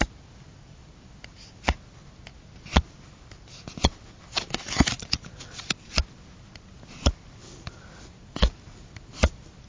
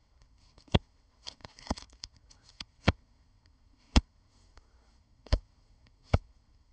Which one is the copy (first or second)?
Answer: second